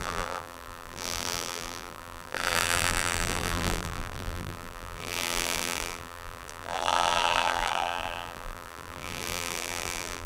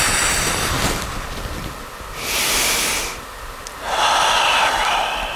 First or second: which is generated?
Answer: first